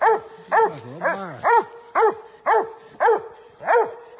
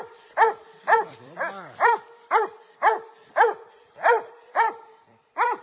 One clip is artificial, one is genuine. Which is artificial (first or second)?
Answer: second